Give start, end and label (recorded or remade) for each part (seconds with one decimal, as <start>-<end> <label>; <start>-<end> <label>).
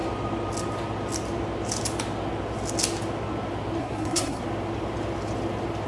0.0-3.8 recorded; 3.8-4.4 remade; 4.4-5.9 recorded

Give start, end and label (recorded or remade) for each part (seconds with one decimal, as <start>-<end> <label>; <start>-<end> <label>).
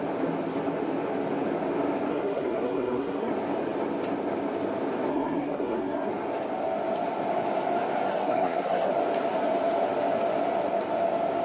0.0-2.1 recorded; 2.1-3.3 remade; 3.3-5.1 recorded; 5.1-6.1 remade; 6.1-8.1 recorded; 8.1-8.9 remade; 8.9-11.4 recorded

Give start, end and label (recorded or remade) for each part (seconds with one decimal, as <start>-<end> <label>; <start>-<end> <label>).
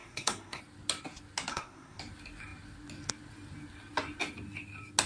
0.0-0.6 remade; 0.6-1.5 recorded; 1.5-2.0 remade; 2.0-5.1 recorded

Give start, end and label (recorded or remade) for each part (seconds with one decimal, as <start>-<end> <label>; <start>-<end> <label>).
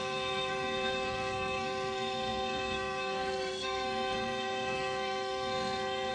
0.0-6.1 remade